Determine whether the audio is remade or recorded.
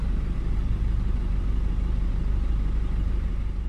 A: remade